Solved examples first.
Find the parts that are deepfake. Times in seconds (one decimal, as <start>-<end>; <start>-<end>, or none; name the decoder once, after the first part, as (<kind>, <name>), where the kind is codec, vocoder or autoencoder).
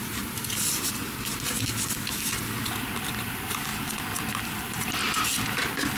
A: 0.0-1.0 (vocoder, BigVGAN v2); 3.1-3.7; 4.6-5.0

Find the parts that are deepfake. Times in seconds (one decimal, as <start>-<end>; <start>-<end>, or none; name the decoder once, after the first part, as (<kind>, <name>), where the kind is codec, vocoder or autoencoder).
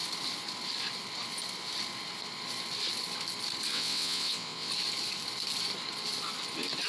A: 3.7-4.7 (vocoder, WaveNeXt)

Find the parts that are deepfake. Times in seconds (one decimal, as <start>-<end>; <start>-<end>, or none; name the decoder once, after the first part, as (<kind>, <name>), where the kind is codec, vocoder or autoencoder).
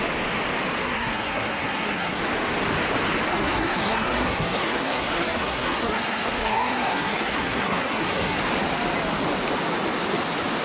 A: 0.8-2.2 (codec, SNAC); 3.3-8.4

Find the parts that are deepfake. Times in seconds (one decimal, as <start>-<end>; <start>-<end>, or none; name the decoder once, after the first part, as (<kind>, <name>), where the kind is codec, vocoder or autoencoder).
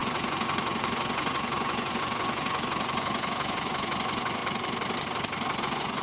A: 0.0-4.4 (vocoder, Vocos); 5.6-6.0